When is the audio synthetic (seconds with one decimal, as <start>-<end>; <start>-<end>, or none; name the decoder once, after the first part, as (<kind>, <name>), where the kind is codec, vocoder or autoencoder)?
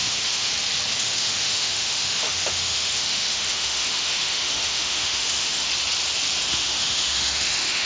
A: 0.0-0.5 (autoencoder, DAC-VAE); 1.0-5.7; 6.5-7.9